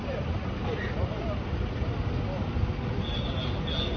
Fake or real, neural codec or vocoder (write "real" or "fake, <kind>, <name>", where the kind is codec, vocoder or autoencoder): real